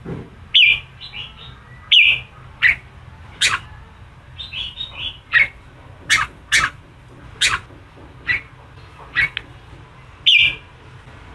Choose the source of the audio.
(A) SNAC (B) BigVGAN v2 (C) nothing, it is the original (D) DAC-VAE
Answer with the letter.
C